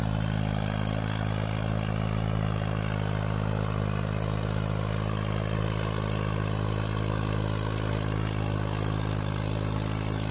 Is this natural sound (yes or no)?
yes